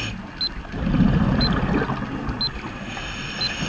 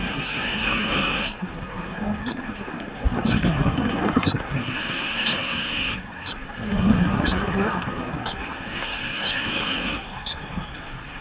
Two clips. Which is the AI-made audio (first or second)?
second